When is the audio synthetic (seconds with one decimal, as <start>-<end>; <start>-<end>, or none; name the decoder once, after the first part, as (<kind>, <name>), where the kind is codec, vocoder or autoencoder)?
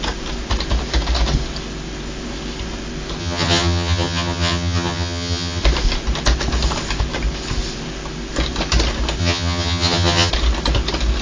3.2-5.6 (vocoder, HiFi-GAN); 9.2-10.3